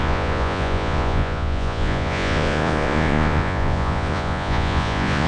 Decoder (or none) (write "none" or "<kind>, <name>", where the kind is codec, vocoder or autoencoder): vocoder, Vocos